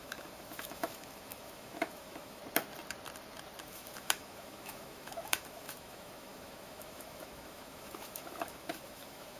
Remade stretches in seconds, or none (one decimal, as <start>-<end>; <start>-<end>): 0.0-2.4; 3.6-9.4